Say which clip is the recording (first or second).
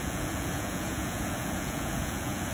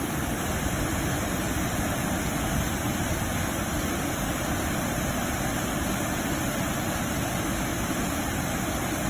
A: second